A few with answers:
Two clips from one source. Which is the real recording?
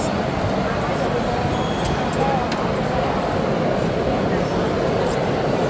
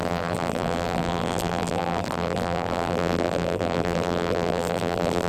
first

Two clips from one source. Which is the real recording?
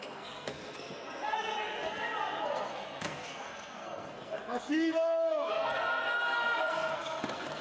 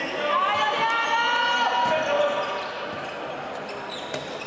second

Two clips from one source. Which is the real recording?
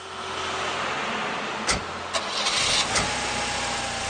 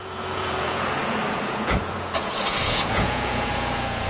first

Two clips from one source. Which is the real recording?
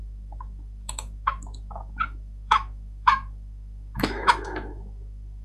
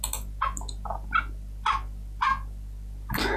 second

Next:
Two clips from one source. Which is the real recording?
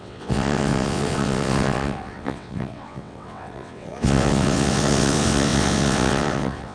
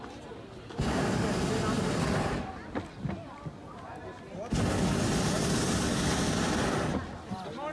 second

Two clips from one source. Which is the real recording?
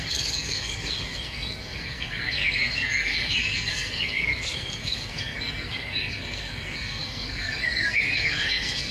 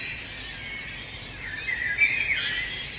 second